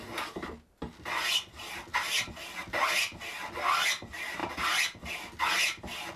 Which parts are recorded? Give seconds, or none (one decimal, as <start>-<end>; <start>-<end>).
0.0-2.6; 3.2-6.2

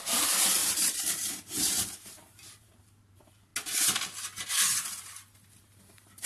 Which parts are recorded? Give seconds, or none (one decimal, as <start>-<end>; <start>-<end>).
3.5-5.6

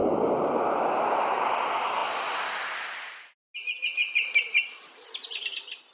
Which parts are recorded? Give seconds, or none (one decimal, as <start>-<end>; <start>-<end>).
0.6-2.0; 2.5-4.0; 4.8-5.9

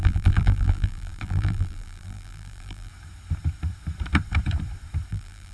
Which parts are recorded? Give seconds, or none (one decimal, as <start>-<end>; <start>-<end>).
2.9-5.1

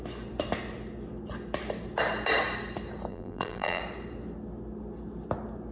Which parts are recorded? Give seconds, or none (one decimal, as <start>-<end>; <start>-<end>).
0.0-3.1; 3.8-5.7